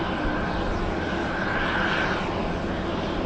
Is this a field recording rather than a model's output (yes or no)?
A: yes